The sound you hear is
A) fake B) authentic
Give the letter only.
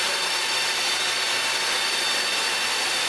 B